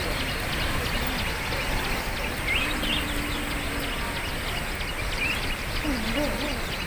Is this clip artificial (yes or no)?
no